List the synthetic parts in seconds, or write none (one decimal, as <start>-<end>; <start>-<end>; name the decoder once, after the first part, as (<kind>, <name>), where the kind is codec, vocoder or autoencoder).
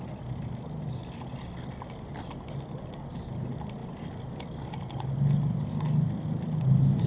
none